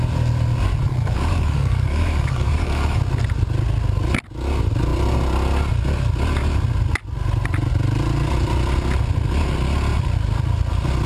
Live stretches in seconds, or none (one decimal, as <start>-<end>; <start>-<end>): 0.0-0.9; 3.0-11.1